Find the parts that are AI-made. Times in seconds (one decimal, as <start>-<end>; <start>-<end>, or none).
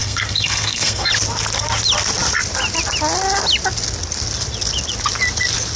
0.0-1.1